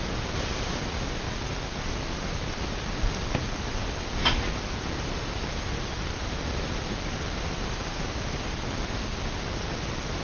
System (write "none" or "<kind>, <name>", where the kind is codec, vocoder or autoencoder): none